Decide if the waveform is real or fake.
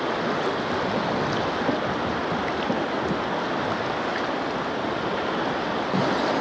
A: real